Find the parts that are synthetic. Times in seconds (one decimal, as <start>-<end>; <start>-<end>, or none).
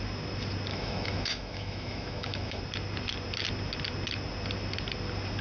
0.7-2.6